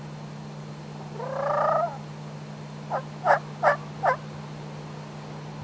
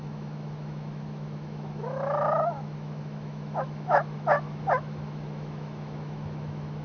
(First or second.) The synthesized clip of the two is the second